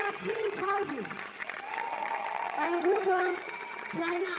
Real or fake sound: fake